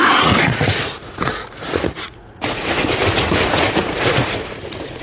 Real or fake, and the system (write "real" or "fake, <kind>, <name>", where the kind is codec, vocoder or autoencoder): fake, vocoder, Vocos